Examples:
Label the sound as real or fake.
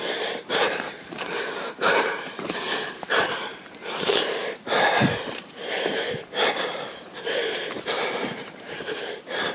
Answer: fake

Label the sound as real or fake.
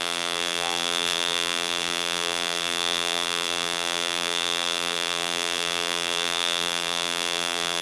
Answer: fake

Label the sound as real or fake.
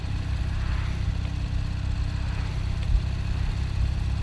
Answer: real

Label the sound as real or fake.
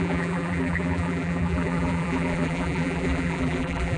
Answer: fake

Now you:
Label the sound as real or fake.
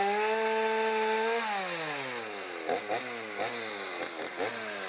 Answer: real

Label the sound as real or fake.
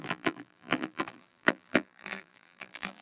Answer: fake